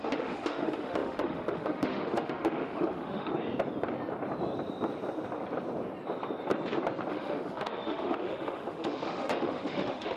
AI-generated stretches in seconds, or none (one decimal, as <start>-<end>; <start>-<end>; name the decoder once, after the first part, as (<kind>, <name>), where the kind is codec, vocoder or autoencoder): 0.0-3.3 (autoencoder, DAC-VAE); 7.1-10.2